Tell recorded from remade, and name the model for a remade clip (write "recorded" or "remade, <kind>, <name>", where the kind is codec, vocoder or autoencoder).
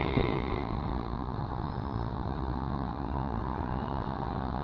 remade, vocoder, WaveNeXt